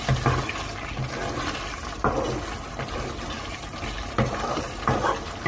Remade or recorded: recorded